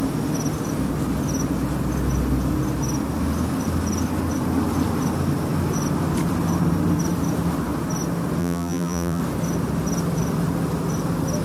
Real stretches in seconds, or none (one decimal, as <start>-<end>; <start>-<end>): 0.0-8.4; 9.2-11.4